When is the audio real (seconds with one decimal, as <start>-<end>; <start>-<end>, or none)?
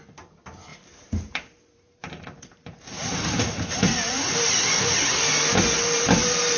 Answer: 0.0-0.7; 4.7-6.6